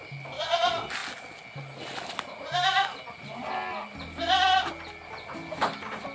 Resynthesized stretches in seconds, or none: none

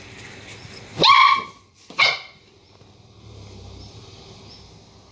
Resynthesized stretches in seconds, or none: 0.9-2.5

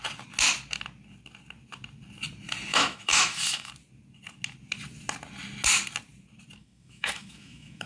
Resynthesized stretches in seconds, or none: 2.7-3.7; 6.6-7.9

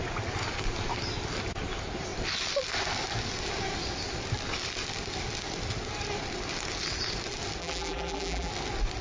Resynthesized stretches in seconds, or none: 7.6-8.5

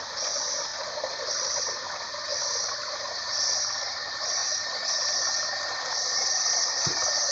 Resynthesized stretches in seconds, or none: 0.0-4.4; 5.9-7.3

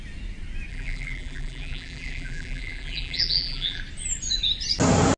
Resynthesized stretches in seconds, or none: 0.7-3.8

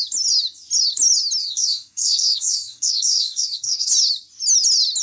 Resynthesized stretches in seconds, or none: 1.4-3.9

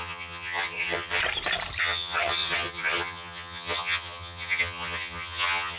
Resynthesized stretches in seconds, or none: 0.0-1.2; 1.8-5.8